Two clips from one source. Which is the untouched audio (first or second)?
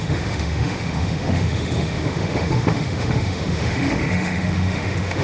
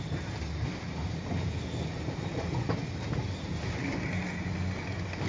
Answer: second